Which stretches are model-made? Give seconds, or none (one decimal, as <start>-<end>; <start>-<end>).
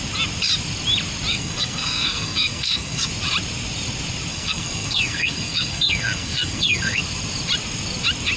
1.3-3.1; 4.3-7.0